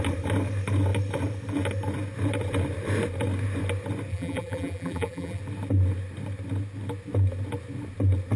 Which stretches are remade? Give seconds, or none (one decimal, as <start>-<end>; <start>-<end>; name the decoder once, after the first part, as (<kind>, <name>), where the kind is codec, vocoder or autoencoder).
4.1-5.4 (vocoder, BigVGAN v2)